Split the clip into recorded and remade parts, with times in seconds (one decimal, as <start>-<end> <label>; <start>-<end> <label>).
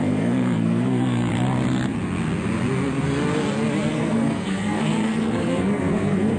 0.0-1.3 remade; 1.3-3.9 recorded; 3.9-6.4 remade